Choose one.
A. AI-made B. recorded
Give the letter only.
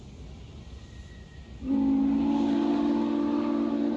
B